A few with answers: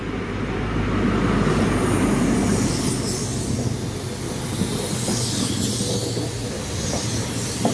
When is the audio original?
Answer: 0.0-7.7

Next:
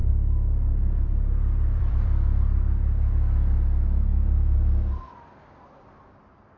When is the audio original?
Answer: 2.6-6.6

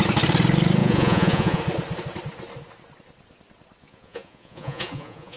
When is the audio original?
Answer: 0.0-0.8; 1.6-3.8

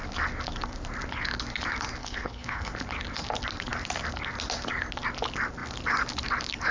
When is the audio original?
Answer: 0.0-2.0; 2.7-6.7

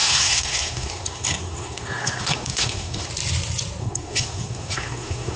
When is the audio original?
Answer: 3.1-3.8

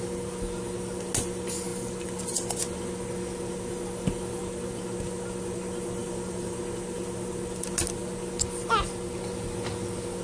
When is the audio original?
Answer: 0.0-1.7; 2.6-6.0; 6.6-10.2

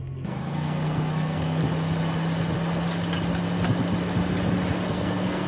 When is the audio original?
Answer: 1.6-4.9

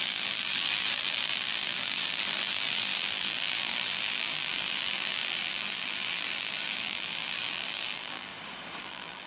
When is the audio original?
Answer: 8.3-8.8